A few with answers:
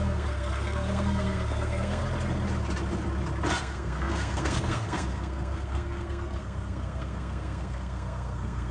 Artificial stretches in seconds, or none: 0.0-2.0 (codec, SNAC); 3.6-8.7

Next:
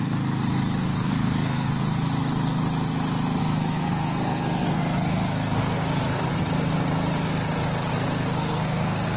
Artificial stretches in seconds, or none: 0.8-1.7 (codec, SNAC); 3.4-6.0; 7.9-9.2

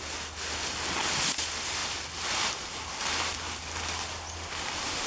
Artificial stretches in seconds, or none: none

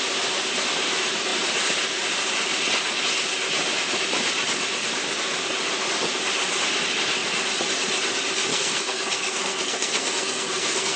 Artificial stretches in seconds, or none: 8.5-11.0 (codec, SNAC)